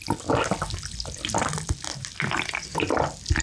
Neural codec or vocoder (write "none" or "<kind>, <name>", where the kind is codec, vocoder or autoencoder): none